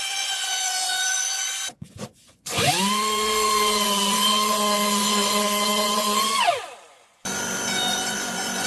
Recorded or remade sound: remade